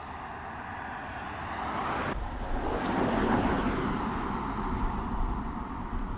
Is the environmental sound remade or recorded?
recorded